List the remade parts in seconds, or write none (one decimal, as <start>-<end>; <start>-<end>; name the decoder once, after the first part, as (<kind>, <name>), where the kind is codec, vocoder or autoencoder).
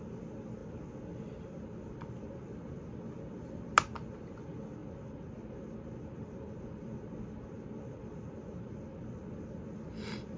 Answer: none